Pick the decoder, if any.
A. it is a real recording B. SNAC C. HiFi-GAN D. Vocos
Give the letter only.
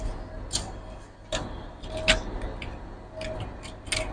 A